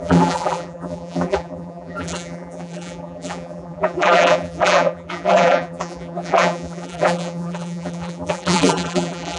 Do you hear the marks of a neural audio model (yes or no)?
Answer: yes